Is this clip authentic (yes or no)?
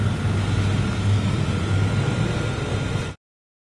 yes